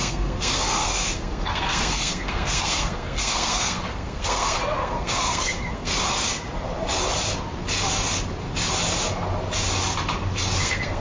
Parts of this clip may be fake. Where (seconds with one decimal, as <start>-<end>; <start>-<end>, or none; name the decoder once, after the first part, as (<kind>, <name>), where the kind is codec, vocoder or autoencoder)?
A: 0.0-5.9 (codec, SNAC); 10.6-11.0